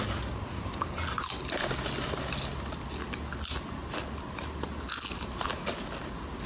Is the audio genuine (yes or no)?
yes